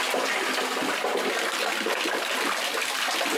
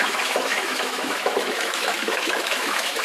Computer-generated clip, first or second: second